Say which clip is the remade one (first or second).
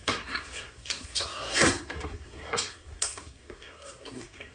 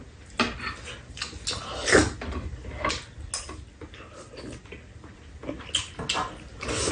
first